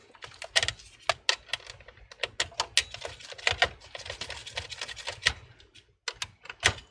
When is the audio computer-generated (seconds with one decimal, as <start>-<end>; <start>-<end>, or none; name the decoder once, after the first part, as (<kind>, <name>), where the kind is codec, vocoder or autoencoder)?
none